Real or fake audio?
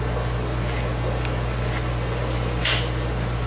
real